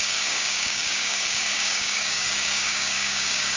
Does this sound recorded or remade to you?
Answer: remade